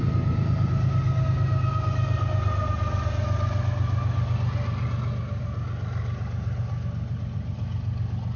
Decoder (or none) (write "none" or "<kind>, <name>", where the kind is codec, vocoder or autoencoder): none